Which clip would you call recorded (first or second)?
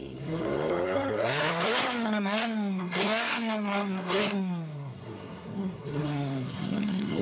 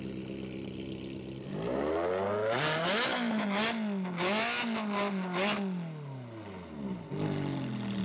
second